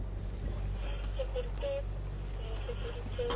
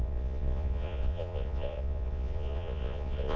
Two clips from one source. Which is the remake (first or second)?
second